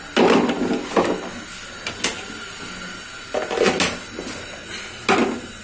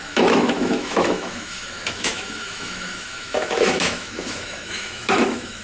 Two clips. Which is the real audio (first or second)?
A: first